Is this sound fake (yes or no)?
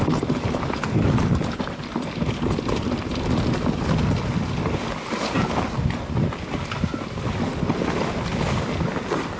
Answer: no